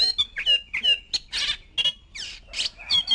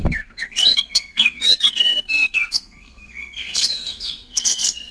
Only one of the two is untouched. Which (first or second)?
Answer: first